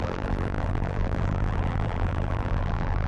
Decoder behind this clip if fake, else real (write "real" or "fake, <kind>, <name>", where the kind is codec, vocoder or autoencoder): fake, vocoder, BigVGAN v2